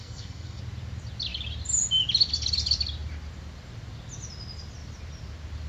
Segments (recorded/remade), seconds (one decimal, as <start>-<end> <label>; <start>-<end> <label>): 0.0-0.6 remade; 0.6-5.7 recorded